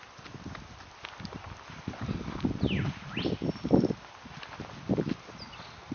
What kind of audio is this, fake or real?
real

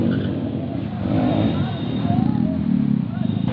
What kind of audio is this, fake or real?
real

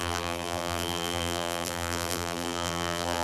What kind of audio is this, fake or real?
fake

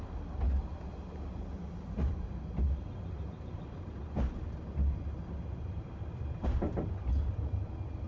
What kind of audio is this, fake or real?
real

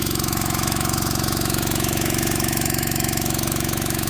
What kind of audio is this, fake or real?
fake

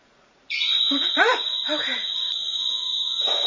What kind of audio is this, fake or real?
fake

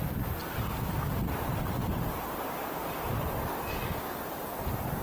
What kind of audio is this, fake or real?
real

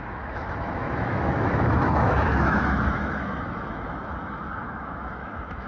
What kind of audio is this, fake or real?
fake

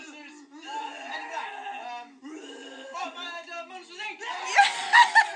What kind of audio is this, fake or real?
real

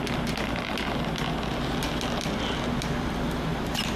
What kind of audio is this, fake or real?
real